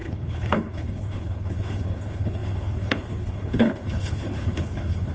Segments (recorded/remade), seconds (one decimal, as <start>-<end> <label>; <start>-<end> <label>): 0.0-5.1 remade